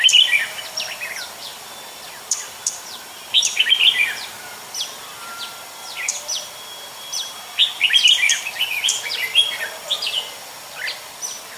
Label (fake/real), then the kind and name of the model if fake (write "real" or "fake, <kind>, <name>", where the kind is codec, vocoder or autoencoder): fake, vocoder, BigVGAN v2